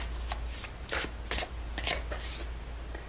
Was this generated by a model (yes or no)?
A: no